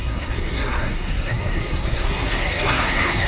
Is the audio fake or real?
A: fake